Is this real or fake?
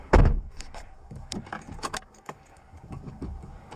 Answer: fake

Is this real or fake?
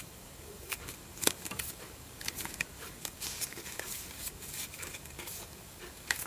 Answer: fake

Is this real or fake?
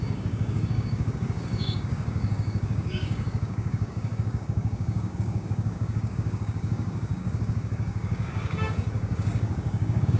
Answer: fake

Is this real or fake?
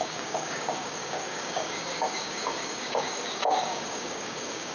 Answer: fake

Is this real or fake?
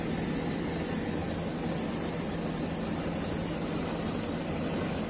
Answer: real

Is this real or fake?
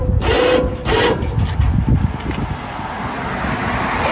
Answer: real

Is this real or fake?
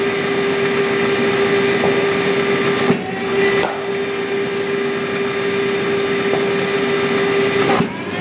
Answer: real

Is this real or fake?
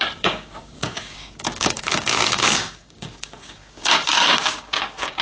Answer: fake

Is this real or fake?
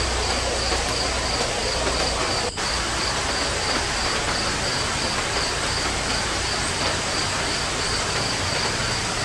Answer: real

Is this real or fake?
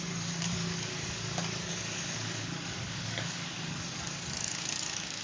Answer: fake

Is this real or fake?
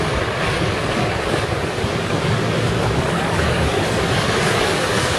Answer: fake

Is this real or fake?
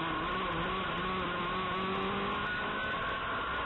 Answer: real